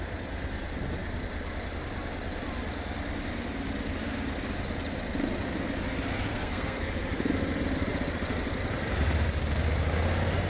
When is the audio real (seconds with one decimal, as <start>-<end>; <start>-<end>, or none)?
0.0-6.3; 6.9-10.5